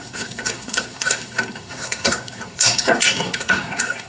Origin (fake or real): fake